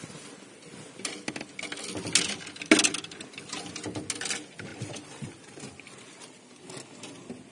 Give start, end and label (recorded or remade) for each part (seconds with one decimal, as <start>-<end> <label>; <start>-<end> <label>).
0.0-4.7 recorded; 4.7-5.4 remade; 5.4-7.5 recorded